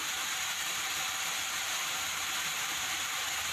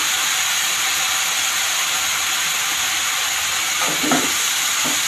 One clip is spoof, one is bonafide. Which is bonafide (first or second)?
second